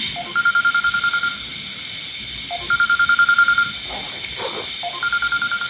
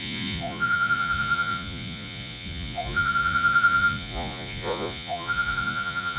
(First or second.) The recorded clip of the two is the first